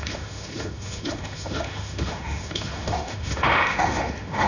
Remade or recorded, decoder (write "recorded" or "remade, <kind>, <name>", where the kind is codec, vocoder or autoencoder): remade, autoencoder, DAC-VAE